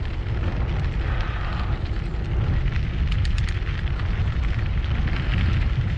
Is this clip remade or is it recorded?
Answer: recorded